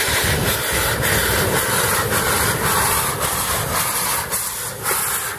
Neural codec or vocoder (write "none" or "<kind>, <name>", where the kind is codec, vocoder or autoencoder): none